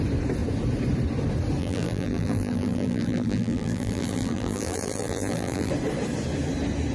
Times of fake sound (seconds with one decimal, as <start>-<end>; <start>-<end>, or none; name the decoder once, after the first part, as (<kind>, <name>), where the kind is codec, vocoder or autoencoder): 1.6-5.7 (vocoder, BigVGAN v2)